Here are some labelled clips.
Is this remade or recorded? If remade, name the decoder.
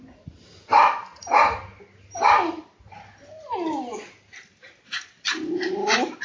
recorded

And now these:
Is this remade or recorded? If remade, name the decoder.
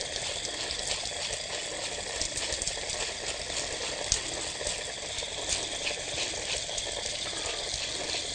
recorded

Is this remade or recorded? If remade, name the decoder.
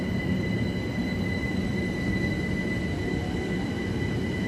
recorded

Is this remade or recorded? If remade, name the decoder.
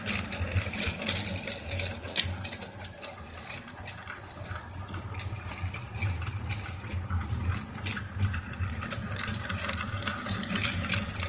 recorded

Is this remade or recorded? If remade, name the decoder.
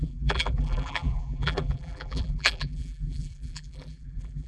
remade, vocoder, BigVGAN v2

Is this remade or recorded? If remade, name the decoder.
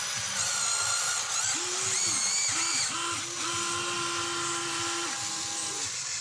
recorded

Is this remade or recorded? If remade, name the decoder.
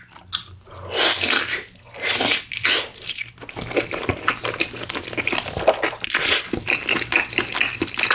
recorded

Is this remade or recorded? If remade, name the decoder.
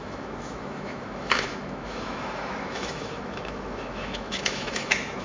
remade, autoencoder, DAC-VAE